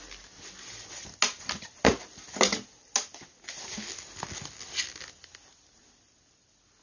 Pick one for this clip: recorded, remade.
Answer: recorded